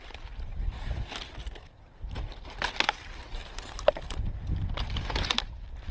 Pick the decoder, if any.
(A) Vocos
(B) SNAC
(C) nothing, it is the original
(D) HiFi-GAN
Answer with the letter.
C